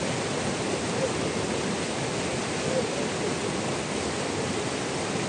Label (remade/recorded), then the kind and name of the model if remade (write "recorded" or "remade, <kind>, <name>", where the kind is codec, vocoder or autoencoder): recorded